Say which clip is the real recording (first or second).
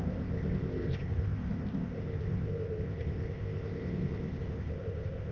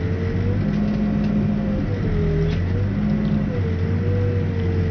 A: second